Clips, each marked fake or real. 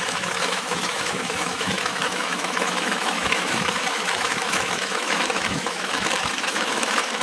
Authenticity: fake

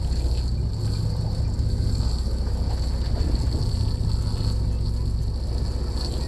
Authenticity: real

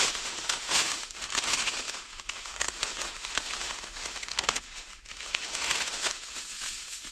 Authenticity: fake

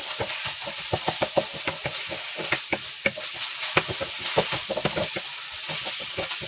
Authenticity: real